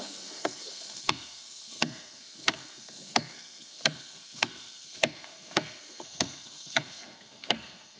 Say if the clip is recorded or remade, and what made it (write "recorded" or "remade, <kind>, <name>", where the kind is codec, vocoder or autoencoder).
remade, codec, SNAC